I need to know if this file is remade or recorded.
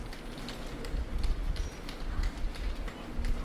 recorded